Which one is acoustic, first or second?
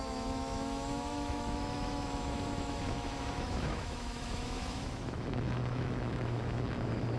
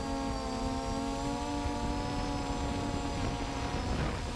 second